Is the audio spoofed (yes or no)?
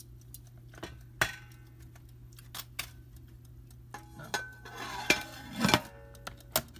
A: no